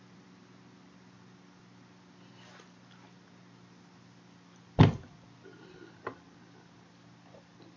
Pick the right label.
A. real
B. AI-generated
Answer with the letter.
A